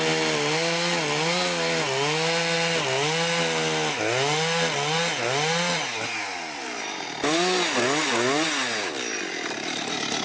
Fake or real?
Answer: real